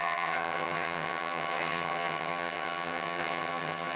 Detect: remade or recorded remade